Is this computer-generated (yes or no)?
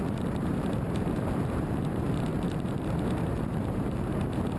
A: yes